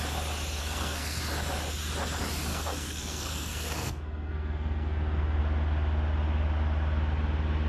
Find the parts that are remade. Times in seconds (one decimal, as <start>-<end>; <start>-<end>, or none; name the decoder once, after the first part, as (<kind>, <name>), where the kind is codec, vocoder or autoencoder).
0.6-1.2 (codec, SNAC); 2.5-5.4

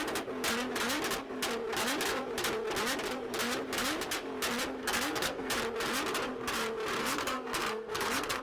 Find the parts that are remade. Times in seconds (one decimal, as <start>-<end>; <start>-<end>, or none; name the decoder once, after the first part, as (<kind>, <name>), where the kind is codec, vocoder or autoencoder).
4.8-5.5 (codec, SNAC); 7.0-8.4